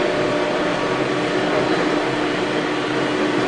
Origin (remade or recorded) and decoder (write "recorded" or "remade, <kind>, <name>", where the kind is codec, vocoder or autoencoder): recorded